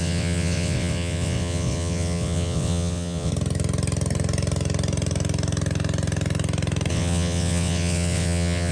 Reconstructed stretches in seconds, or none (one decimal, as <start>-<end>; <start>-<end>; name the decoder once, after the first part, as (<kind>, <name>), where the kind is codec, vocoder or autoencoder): 0.0-3.3 (vocoder, WaveNeXt); 6.9-8.7